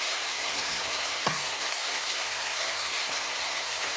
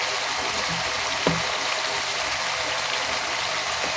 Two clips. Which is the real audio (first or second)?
second